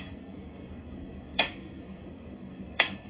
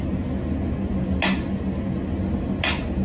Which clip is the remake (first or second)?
first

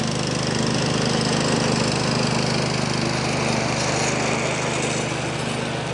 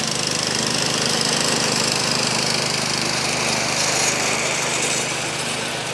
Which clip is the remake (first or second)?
second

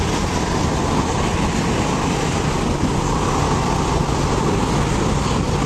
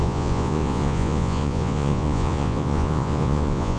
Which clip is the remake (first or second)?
second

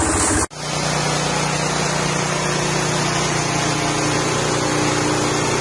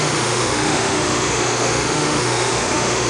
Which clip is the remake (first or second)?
second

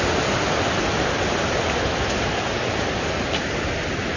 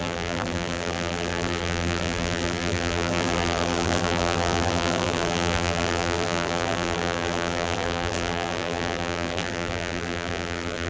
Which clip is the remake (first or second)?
second